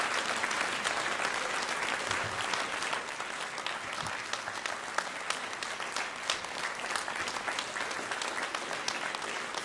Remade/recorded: recorded